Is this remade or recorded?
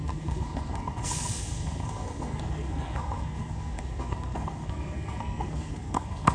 remade